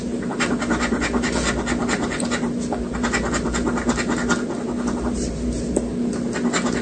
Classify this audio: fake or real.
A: real